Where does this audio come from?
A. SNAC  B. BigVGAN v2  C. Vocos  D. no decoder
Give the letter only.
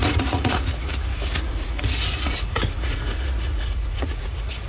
C